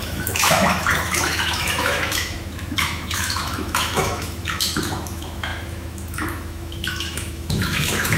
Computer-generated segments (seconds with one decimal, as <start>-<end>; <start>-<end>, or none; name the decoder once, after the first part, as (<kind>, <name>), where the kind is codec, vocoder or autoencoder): 0.0-8.2 (autoencoder, DAC-VAE)